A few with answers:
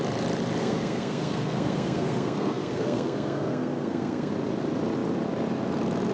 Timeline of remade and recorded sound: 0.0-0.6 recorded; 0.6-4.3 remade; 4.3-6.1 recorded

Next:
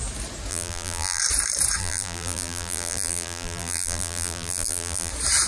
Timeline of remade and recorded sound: 0.0-0.5 recorded; 0.5-1.2 remade; 1.2-1.8 recorded; 1.8-5.1 remade; 5.1-5.5 recorded

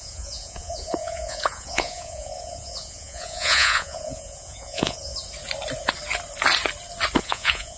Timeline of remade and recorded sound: 0.0-5.1 remade; 5.1-7.2 recorded; 7.2-7.8 remade

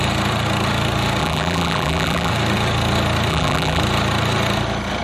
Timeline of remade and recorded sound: 0.0-1.2 recorded; 1.2-2.3 remade; 2.3-3.3 recorded; 3.3-3.8 remade; 3.8-5.0 recorded

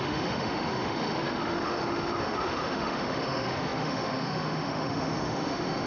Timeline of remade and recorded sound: 0.0-5.9 remade

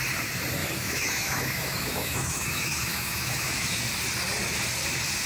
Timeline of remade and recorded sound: 0.0-0.6 recorded; 0.6-3.8 remade; 3.8-5.3 recorded

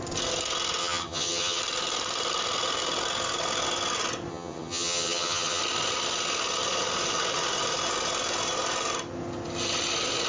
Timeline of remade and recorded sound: 0.0-0.8 recorded; 0.8-1.6 remade; 1.6-4.3 recorded; 4.3-5.6 remade; 5.6-10.3 recorded